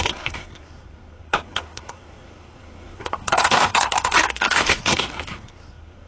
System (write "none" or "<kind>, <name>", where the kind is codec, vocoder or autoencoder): codec, SNAC